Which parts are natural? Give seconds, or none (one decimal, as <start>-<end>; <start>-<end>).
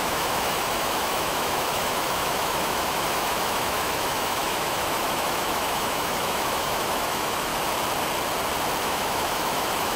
7.5-8.8